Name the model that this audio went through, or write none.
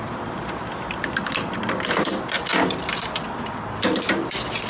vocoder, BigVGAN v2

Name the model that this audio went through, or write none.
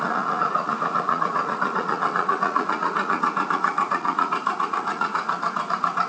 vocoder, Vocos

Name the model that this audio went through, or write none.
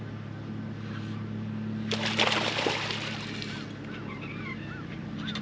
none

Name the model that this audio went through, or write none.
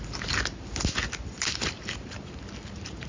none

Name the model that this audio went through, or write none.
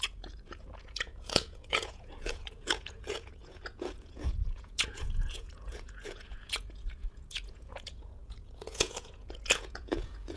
vocoder, Vocos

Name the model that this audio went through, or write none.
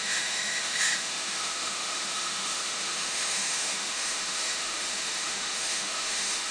autoencoder, DAC-VAE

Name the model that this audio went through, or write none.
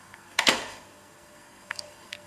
codec, SNAC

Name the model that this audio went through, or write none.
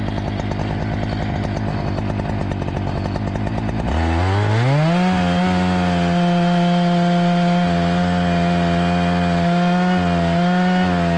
none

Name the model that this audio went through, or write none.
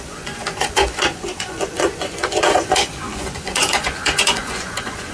vocoder, Vocos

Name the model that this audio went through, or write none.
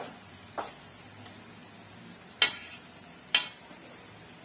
none